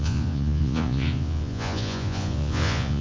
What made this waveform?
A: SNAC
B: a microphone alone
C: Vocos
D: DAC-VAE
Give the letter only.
C